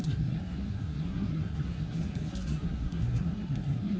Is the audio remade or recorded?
remade